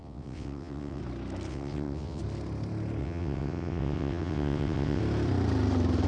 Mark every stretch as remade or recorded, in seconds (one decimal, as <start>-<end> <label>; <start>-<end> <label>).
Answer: 0.0-1.0 remade; 1.0-1.5 recorded; 1.5-2.2 remade; 2.2-3.0 recorded; 3.0-5.0 remade; 5.0-6.1 recorded

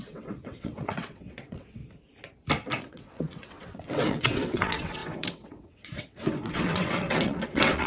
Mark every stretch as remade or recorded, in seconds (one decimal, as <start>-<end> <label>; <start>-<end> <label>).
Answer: 0.0-1.8 remade; 1.8-2.8 recorded; 2.8-7.9 remade

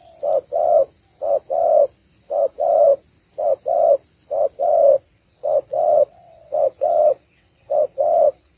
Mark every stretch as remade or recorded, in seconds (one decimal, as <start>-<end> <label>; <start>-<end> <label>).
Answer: 0.0-4.9 recorded; 4.9-8.6 remade

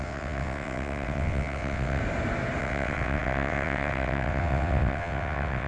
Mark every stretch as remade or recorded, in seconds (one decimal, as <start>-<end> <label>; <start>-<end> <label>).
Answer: 0.0-2.0 remade; 2.0-2.6 recorded; 2.6-5.7 remade

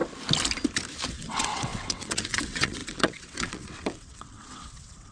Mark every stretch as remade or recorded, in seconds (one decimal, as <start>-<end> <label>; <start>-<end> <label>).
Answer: 0.0-1.1 recorded; 1.1-5.1 remade